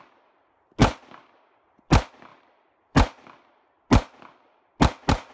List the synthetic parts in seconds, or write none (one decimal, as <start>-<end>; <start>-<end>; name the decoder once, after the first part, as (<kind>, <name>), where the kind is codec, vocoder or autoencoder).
0.8-1.8 (vocoder, BigVGAN v2); 2.3-3.5